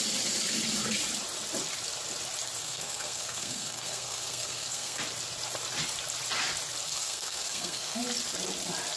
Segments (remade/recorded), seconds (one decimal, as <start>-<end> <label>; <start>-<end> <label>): 0.0-2.6 recorded; 2.6-5.0 remade; 5.0-6.9 recorded; 6.9-8.0 remade; 8.0-9.0 recorded